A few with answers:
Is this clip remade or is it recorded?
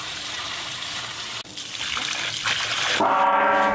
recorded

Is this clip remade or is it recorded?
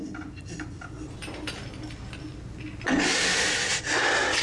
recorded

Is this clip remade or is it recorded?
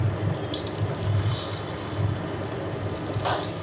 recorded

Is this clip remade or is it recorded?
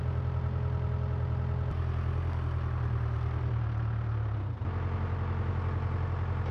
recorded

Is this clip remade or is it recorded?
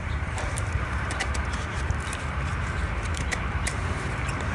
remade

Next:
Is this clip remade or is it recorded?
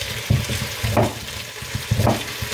recorded